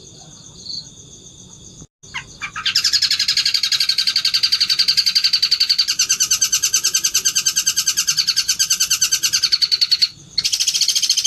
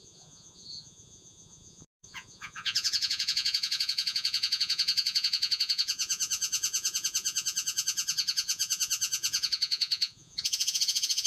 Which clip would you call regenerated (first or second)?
second